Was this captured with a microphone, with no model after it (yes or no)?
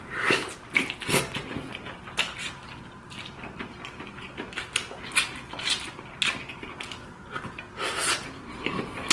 yes